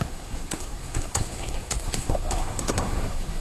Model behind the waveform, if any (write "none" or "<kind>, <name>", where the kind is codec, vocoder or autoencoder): codec, SNAC